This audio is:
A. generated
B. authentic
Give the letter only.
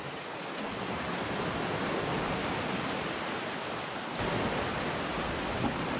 B